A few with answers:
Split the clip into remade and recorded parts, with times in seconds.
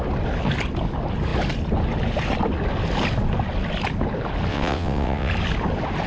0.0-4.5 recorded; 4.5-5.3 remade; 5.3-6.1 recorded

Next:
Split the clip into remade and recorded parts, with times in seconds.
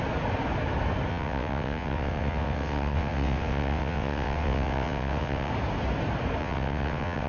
0.0-1.1 recorded; 1.1-5.5 remade; 5.5-6.4 recorded; 6.4-7.3 remade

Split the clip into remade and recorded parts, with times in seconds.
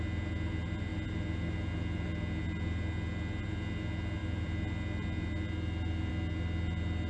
0.0-7.1 recorded